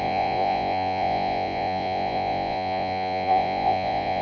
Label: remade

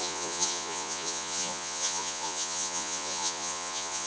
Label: remade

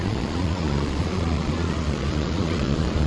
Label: remade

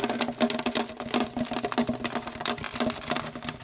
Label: recorded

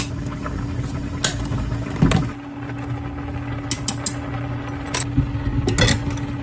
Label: recorded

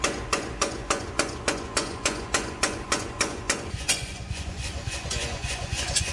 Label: remade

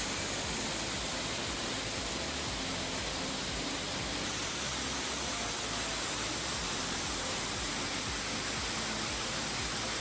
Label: recorded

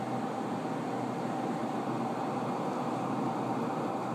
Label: recorded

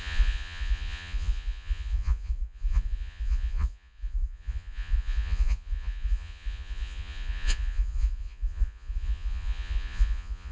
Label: remade